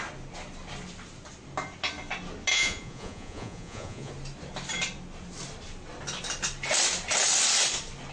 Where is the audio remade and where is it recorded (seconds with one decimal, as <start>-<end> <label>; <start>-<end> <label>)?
0.0-2.5 recorded; 2.5-4.1 remade; 4.1-8.1 recorded